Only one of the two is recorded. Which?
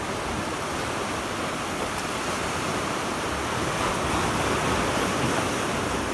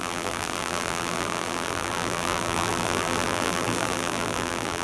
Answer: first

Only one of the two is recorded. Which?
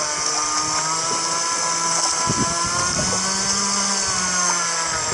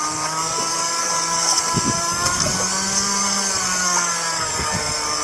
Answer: first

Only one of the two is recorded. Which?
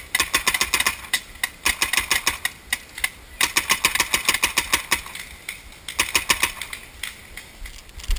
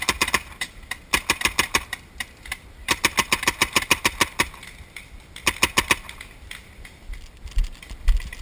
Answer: first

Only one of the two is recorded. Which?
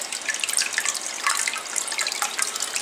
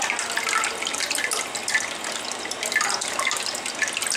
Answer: second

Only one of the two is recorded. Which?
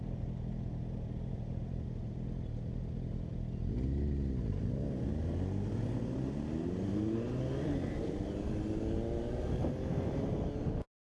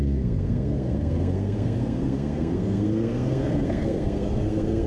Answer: first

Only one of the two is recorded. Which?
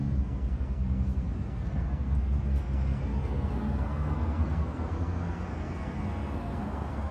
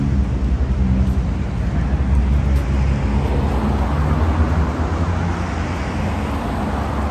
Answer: second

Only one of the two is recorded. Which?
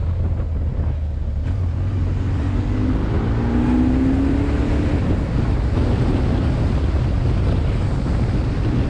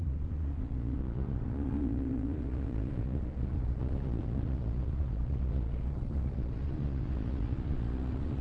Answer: first